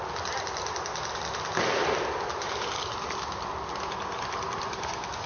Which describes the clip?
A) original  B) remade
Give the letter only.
A